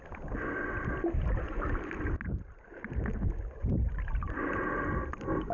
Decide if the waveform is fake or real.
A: real